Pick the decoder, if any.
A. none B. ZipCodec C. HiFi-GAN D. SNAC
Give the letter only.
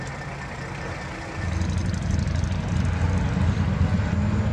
A